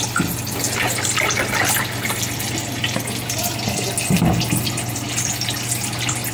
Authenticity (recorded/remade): recorded